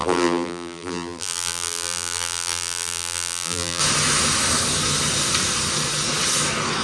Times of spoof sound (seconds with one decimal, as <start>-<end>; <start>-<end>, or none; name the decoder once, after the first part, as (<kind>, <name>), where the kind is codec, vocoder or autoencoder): 0.0-3.8 (vocoder, BigVGAN v2)